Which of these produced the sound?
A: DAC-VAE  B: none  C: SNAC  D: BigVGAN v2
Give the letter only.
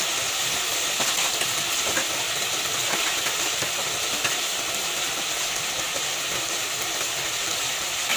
B